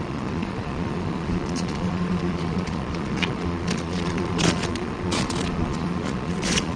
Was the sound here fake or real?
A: fake